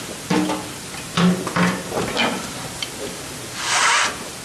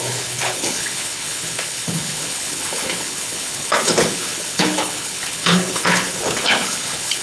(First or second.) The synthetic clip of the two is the second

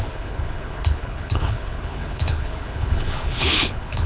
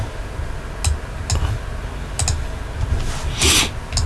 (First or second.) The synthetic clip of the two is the first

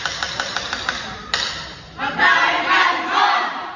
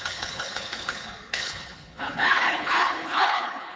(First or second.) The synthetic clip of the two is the second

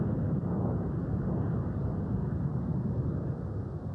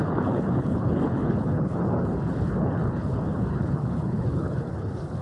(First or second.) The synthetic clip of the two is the second